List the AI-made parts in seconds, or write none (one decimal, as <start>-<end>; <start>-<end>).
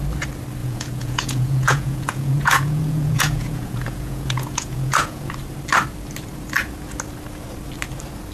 0.6-5.3